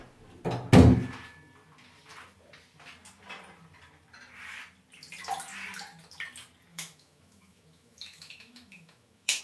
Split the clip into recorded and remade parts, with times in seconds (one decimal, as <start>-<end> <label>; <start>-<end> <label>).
0.0-6.7 recorded; 6.7-9.4 remade

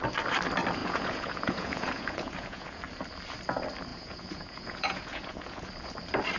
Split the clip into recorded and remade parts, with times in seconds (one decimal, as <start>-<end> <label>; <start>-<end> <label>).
0.0-0.8 recorded; 0.8-2.8 remade; 2.8-3.9 recorded; 3.9-5.7 remade; 5.7-6.4 recorded

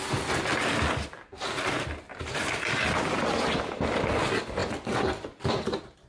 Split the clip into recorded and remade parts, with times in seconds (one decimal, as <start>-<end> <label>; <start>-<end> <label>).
0.0-6.1 recorded

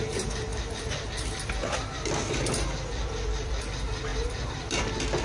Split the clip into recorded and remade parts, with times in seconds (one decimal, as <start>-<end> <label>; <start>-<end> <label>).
0.0-0.5 recorded; 0.5-3.6 remade; 3.6-4.1 recorded; 4.1-4.8 remade; 4.8-5.2 recorded

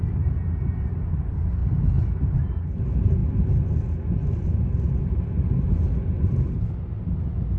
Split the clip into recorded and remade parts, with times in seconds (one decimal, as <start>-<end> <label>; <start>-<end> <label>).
0.0-7.6 recorded

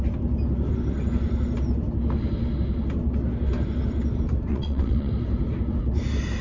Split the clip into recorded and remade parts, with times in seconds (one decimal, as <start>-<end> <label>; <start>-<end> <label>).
0.0-4.5 recorded; 4.5-5.1 remade; 5.1-6.4 recorded